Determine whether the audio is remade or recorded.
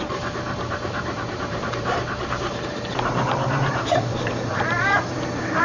remade